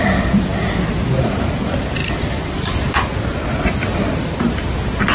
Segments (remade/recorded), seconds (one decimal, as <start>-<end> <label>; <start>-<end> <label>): 0.0-0.5 remade; 0.5-1.2 recorded; 1.2-5.1 remade